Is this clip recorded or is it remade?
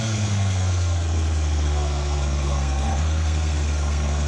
remade